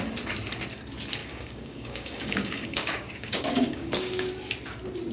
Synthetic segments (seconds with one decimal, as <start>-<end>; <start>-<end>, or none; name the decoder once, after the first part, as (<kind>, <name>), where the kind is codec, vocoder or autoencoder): 1.2-4.3 (codec, DAC)